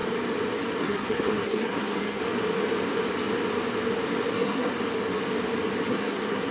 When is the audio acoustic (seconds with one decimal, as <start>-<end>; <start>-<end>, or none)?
0.0-0.8; 2.2-4.3; 4.7-5.9